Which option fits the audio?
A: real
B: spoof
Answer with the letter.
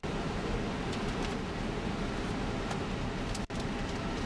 A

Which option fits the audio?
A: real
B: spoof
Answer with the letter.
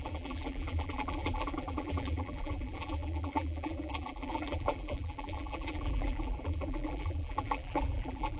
B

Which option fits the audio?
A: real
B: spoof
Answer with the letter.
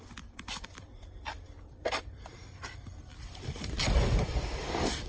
B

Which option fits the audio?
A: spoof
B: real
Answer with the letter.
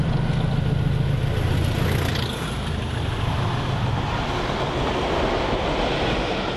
B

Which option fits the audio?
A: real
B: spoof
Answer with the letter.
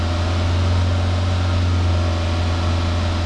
A